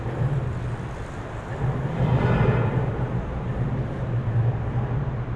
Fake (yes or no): yes